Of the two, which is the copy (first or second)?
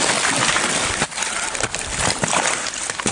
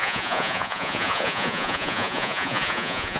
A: second